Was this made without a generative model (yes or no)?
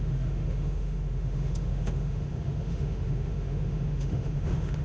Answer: no